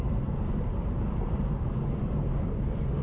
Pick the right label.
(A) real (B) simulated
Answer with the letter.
B